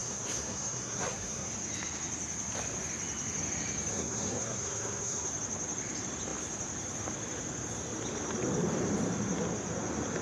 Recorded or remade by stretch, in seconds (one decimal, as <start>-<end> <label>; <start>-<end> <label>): 0.0-1.5 remade; 1.5-3.9 recorded; 3.9-5.3 remade; 5.3-10.2 recorded